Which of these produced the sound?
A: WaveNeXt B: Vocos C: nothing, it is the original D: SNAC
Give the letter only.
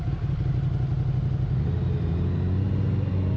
C